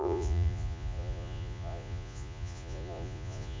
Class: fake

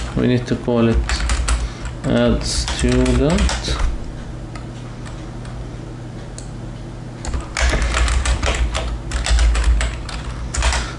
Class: real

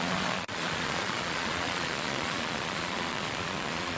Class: fake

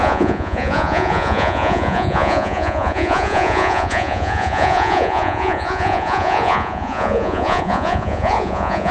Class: fake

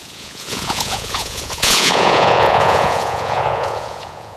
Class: fake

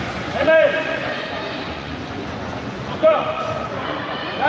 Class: fake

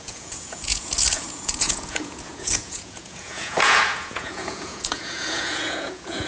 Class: fake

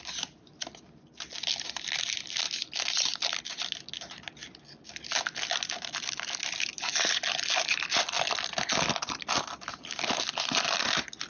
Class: real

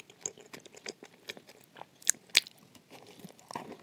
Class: real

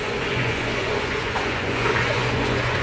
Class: fake